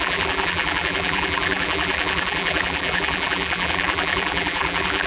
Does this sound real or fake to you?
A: fake